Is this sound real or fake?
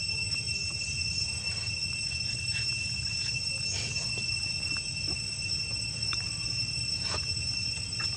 real